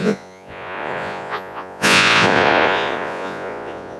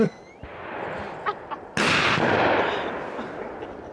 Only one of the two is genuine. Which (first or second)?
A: second